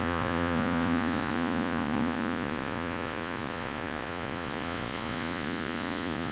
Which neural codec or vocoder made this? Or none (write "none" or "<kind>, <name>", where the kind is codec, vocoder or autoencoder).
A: vocoder, Vocos